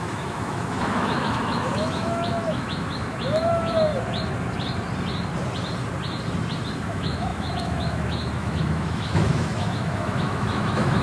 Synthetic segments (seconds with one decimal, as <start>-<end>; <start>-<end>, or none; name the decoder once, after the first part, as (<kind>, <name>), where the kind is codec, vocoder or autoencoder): 0.0-3.9 (autoencoder, DAC-VAE); 6.8-11.0